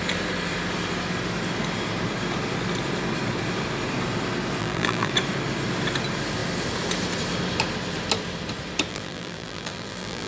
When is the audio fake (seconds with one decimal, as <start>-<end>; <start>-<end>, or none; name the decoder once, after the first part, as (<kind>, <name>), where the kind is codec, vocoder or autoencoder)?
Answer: 4.6-5.1 (vocoder, BigVGAN v2); 8.9-10.3